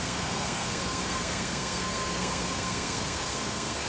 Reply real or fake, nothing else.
fake